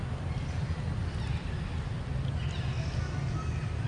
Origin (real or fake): real